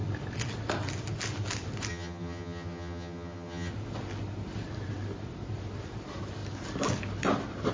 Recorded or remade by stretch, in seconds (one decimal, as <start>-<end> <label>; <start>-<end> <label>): 0.0-1.9 recorded; 1.9-3.7 remade; 3.7-7.7 recorded